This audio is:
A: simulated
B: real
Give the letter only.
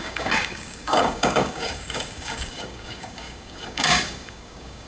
A